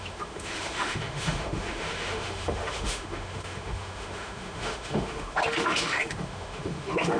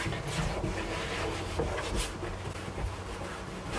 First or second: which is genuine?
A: second